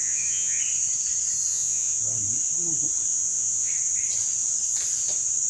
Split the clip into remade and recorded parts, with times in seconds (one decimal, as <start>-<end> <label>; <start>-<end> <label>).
0.0-0.6 remade; 0.6-1.5 recorded; 1.5-2.0 remade; 2.0-3.1 recorded; 3.1-3.7 remade; 3.7-5.5 recorded